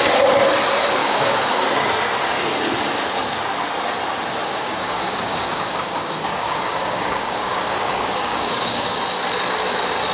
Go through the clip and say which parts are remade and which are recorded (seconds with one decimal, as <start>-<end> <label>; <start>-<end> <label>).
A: 0.0-1.0 recorded; 1.0-1.6 remade; 1.6-4.4 recorded; 4.4-9.0 remade; 9.0-10.1 recorded